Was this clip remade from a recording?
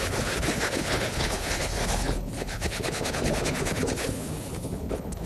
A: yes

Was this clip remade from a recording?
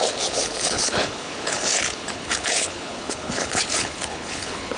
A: yes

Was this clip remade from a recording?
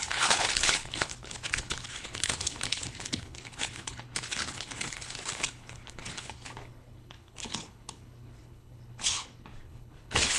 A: yes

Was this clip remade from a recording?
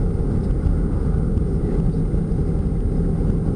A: no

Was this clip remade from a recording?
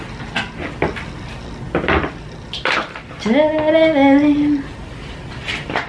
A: no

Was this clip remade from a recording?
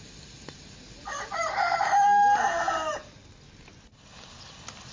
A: no